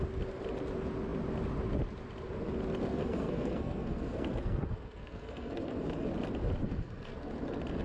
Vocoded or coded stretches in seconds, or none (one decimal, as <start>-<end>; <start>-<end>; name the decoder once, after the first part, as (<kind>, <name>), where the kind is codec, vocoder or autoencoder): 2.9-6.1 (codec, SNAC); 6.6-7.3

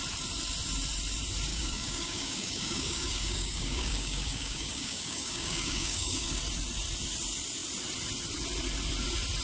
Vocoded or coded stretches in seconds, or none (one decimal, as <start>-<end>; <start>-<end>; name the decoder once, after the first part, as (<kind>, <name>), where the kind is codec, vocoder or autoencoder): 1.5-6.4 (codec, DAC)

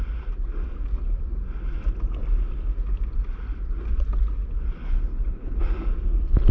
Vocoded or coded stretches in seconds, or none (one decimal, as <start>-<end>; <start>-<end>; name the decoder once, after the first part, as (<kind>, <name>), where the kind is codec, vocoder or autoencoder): 4.8-5.6 (codec, HILCodec)

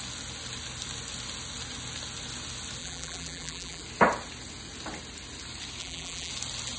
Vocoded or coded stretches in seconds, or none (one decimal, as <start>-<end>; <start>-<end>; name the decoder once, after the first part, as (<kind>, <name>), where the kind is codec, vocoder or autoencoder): 2.8-3.8 (vocoder, BigVGAN v2); 5.8-6.3

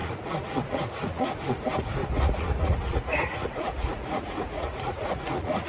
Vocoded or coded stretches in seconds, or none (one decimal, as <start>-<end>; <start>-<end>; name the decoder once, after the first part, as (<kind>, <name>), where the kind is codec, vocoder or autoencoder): 0.0-1.4 (vocoder, Vocos); 2.0-5.7